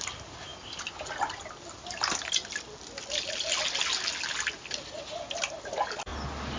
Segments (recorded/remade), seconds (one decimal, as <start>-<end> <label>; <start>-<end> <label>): 0.0-6.6 recorded